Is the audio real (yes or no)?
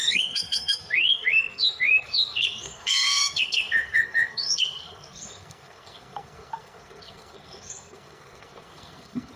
no